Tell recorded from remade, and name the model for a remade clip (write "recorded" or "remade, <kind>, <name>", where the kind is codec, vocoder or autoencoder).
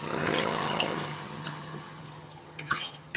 remade, vocoder, HiFi-GAN